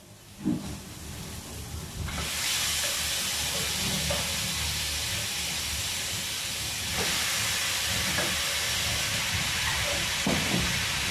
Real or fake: real